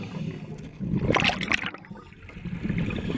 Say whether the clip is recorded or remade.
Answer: recorded